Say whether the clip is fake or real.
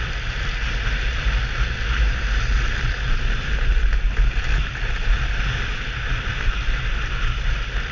real